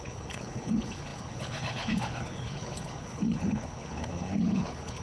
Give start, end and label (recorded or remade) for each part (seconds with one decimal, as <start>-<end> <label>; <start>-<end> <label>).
0.0-5.0 remade